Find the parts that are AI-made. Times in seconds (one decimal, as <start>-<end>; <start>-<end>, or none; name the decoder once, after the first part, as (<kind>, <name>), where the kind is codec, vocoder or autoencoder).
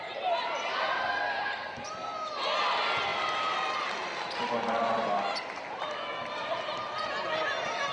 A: none